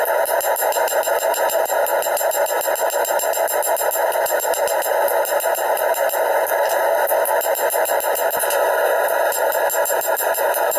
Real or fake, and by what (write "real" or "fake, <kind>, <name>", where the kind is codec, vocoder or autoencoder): real